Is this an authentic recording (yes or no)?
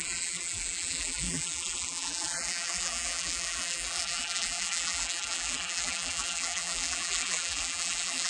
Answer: no